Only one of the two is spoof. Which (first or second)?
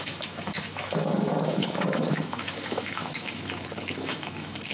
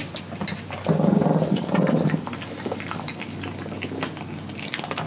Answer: first